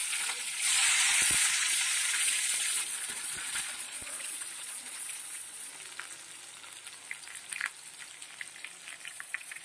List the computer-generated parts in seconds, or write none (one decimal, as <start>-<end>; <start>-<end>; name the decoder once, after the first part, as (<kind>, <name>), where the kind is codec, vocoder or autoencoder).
0.0-5.7 (vocoder, Vocos); 9.1-9.6